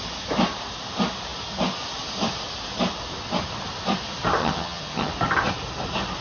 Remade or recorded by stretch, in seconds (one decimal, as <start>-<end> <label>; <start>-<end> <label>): 0.0-4.4 recorded; 4.4-5.1 remade; 5.1-6.2 recorded